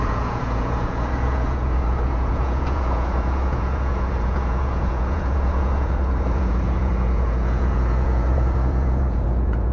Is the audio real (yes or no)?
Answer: no